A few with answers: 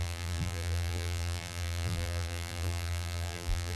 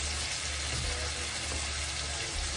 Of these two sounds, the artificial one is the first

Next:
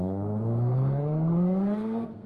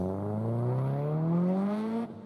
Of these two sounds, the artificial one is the first